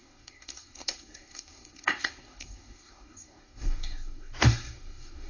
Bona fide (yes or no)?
no